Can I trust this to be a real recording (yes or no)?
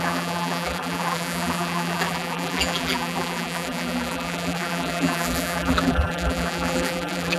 no